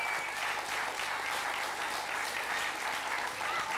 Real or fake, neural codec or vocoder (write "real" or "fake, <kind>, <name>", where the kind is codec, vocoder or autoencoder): real